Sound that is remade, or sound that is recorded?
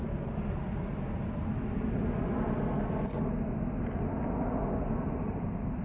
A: recorded